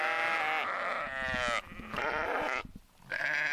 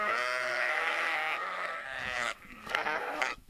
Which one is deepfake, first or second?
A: second